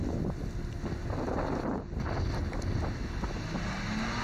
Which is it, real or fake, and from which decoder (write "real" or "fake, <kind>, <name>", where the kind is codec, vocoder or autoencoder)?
real